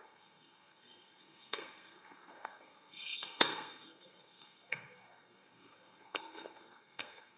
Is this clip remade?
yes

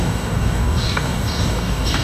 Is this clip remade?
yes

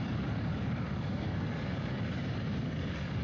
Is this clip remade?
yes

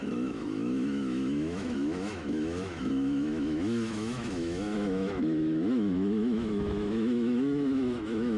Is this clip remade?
yes